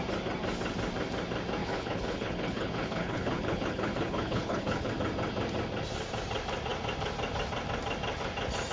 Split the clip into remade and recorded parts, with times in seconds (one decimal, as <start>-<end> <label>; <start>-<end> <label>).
0.0-1.6 recorded; 1.6-4.9 remade; 4.9-8.7 recorded